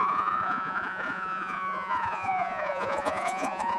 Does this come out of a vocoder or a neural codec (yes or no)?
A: yes